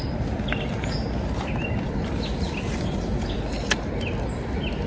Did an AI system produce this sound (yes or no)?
no